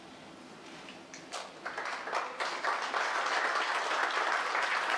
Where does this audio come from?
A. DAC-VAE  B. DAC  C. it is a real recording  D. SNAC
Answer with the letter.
C